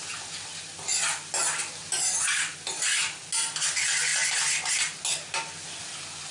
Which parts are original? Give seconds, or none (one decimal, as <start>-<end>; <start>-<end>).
0.0-6.3